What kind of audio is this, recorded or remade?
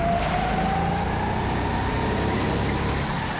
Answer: recorded